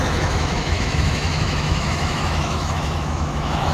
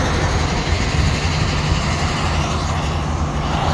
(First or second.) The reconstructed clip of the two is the first